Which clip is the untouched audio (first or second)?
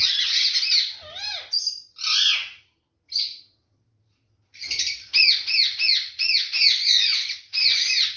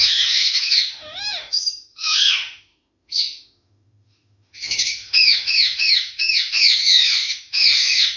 first